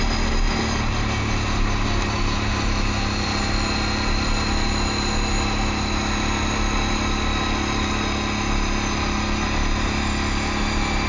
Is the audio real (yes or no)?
yes